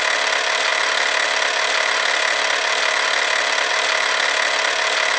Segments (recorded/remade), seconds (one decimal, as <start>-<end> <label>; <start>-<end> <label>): 0.0-5.2 recorded